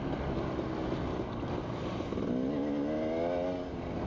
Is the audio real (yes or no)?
yes